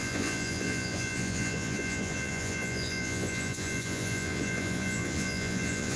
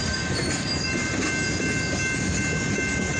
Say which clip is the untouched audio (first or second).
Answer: second